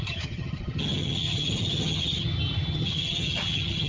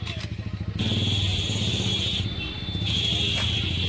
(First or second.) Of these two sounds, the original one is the second